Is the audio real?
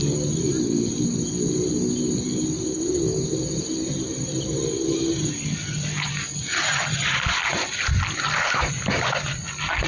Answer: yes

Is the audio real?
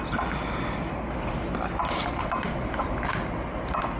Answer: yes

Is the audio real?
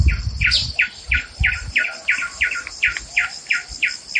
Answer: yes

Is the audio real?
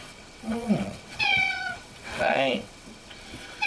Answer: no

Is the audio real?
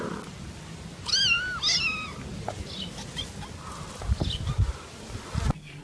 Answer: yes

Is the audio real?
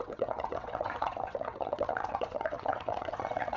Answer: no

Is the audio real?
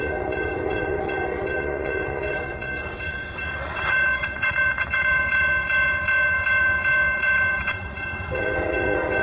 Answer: no